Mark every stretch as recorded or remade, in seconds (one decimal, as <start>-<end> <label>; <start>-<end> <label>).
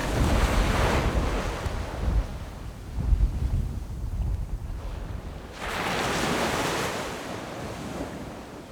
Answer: 0.0-8.7 recorded